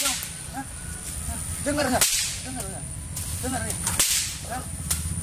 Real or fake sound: fake